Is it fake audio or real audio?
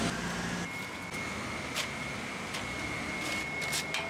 real